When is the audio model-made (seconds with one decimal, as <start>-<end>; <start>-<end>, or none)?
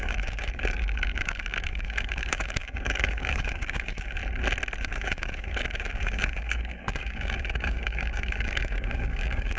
0.0-4.2; 4.8-9.6